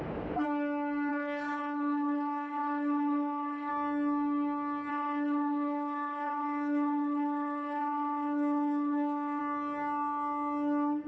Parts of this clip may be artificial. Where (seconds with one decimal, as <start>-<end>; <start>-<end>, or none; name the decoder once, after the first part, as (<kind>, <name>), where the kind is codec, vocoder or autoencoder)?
1.1-3.7 (autoencoder, DAC-VAE); 4.9-9.4